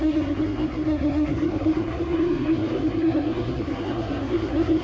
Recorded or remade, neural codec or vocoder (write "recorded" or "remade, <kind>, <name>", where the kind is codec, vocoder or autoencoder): remade, codec, SNAC